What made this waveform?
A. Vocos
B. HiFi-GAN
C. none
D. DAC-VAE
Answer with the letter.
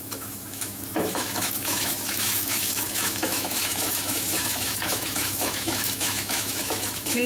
D